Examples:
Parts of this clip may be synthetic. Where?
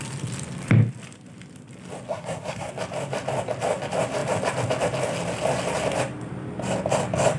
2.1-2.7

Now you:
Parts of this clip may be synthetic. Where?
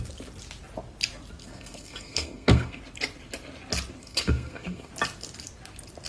1.4-2.8; 4.0-4.9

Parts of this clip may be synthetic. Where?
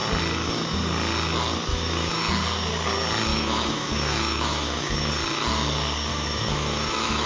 1.7-2.2; 3.3-5.1; 6.1-7.3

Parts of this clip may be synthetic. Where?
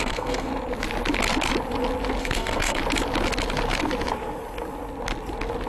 0.0-0.5; 2.2-2.8